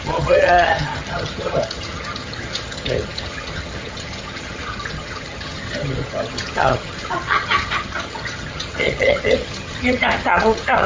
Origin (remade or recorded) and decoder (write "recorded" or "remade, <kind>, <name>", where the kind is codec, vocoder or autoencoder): remade, vocoder, HiFi-GAN